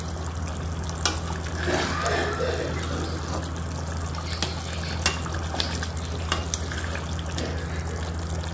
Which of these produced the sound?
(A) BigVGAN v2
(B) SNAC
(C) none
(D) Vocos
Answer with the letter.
C